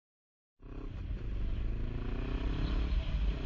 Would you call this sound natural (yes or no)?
yes